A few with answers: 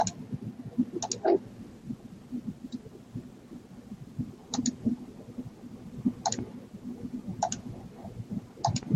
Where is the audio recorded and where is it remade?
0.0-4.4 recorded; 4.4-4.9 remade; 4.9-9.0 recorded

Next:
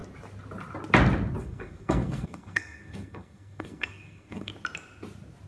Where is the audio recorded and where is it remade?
0.0-1.4 recorded; 1.4-4.5 remade; 4.5-5.5 recorded

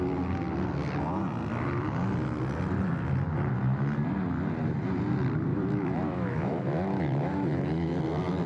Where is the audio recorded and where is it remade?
0.0-5.5 recorded; 5.5-8.0 remade; 8.0-8.5 recorded

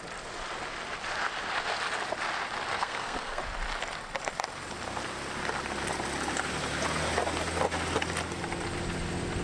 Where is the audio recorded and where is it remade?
0.0-2.7 recorded; 2.7-3.4 remade; 3.4-9.4 recorded

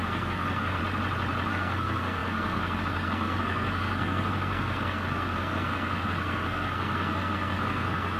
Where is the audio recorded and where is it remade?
0.0-0.8 remade; 0.8-1.5 recorded; 1.5-8.2 remade